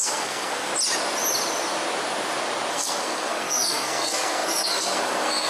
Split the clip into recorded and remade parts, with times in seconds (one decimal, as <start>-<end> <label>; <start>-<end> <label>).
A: 0.0-0.7 remade; 0.7-2.7 recorded; 2.7-5.5 remade